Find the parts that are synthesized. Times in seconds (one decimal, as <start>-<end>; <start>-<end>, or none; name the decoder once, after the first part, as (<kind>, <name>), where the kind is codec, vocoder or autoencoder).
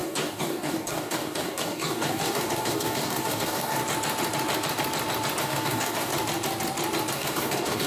0.0-3.8 (codec, DAC); 5.4-6.1; 7.1-7.9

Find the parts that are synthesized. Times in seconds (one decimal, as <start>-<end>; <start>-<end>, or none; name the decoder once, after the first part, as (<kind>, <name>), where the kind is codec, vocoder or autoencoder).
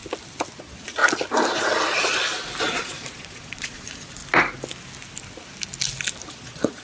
0.6-1.0 (vocoder, Vocos); 2.6-4.2; 6.3-6.8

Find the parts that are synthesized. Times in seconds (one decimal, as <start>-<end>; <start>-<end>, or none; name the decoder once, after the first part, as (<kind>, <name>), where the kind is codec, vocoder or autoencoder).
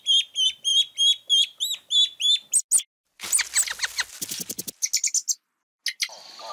none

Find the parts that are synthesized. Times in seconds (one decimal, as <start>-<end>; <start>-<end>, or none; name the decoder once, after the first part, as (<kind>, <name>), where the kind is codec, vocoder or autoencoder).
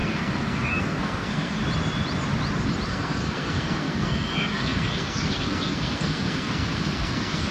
0.0-1.6 (codec, SNAC); 2.9-7.5